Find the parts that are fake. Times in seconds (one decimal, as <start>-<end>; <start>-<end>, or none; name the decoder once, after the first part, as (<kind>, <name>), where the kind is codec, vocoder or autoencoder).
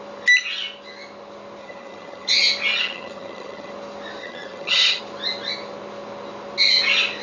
1.6-2.3 (vocoder, HiFi-GAN); 2.7-3.7; 4.2-5.0